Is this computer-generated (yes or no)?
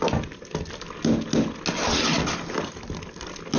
no